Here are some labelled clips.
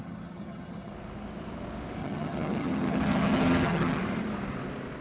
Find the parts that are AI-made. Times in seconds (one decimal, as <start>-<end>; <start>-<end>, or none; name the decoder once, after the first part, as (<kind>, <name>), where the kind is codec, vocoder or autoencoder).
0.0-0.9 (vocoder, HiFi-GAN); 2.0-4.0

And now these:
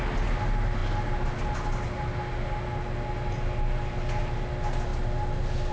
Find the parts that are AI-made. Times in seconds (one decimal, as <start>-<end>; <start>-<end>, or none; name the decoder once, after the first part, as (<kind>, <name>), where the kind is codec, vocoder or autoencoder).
none

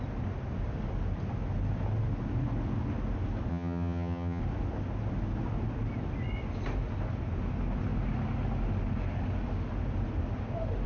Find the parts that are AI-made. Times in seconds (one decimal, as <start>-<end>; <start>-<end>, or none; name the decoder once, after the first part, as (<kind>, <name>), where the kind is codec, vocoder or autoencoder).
3.5-4.4 (vocoder, HiFi-GAN)